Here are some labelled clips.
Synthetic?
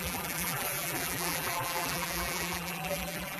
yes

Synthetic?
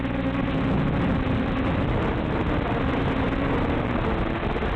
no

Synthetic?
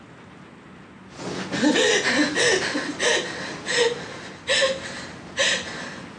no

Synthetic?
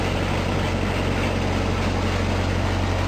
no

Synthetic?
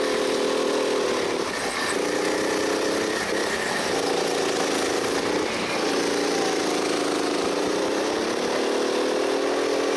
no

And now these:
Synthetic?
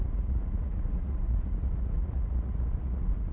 yes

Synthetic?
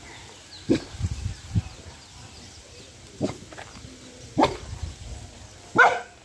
no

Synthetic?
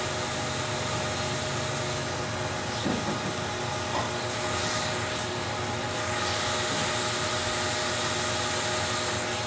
no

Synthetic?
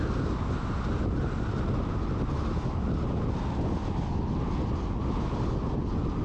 no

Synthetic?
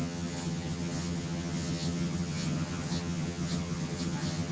yes